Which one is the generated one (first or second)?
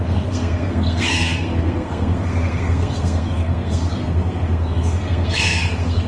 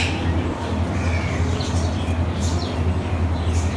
first